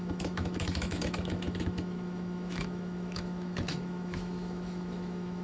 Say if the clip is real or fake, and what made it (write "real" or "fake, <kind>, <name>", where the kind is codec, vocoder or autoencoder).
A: fake, autoencoder, DAC-VAE